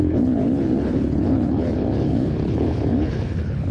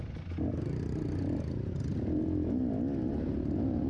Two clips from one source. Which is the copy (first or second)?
first